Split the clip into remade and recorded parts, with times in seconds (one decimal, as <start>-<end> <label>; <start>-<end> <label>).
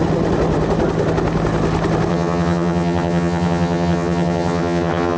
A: 0.0-2.1 recorded; 2.1-5.2 remade